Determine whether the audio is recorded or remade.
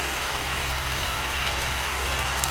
remade